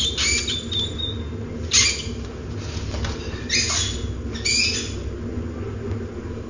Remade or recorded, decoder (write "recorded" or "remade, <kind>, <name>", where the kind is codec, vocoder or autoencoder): recorded